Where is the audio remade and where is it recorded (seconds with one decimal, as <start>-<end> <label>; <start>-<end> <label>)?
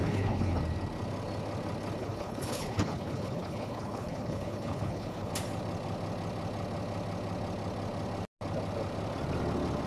0.0-0.6 remade; 0.6-2.0 recorded; 2.0-5.3 remade; 5.3-9.9 recorded